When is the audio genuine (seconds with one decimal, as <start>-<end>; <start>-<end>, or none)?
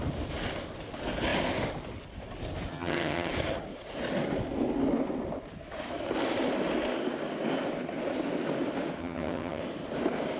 0.0-2.7; 3.3-9.0; 9.6-10.4